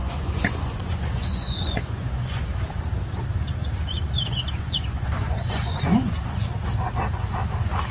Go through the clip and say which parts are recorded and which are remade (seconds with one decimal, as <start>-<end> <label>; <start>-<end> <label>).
0.0-2.4 remade; 2.4-3.8 recorded; 3.8-6.5 remade; 6.5-7.9 recorded